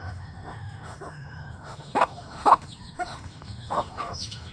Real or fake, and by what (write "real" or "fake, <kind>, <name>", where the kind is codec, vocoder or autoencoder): fake, autoencoder, DAC-VAE